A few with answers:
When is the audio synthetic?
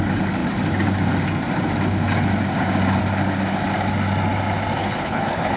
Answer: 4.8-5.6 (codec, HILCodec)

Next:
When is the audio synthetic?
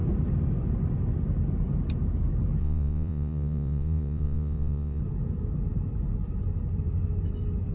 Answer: 2.6-5.0 (vocoder, Vocos)